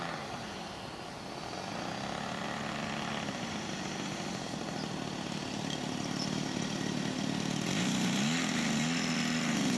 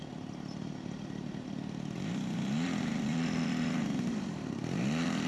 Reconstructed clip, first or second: second